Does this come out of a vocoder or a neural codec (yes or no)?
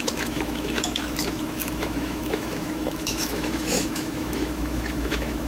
yes